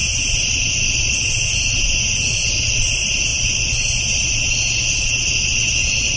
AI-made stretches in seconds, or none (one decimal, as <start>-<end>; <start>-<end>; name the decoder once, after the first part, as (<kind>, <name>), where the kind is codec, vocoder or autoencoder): none